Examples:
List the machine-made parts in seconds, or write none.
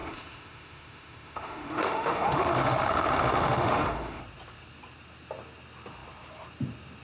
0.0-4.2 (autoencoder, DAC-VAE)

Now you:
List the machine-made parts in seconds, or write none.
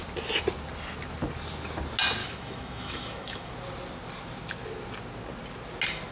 2.2-3.5 (autoencoder, DAC-VAE)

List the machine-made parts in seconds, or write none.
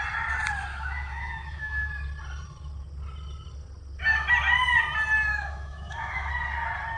0.7-1.9 (autoencoder, DAC-VAE); 5.3-6.3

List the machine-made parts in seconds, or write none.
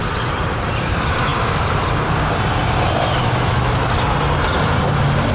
3.2-3.8 (autoencoder, DAC-VAE)